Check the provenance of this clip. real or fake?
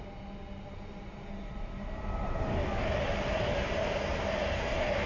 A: real